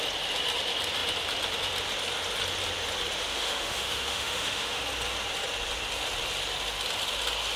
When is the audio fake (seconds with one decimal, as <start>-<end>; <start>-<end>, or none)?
3.3-4.8